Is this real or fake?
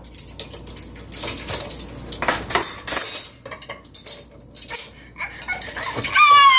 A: real